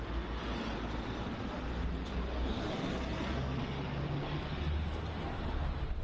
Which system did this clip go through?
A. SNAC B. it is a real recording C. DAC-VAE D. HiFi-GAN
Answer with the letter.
B